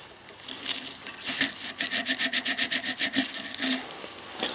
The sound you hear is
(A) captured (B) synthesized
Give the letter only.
A